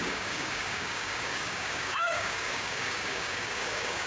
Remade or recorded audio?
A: remade